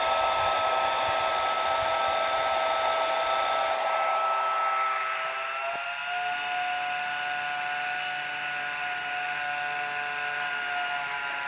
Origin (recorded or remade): recorded